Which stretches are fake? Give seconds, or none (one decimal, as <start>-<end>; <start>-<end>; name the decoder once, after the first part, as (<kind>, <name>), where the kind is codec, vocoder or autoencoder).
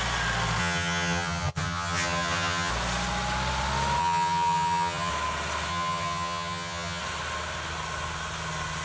0.6-2.7 (vocoder, HiFi-GAN); 4.0-5.1; 5.7-7.0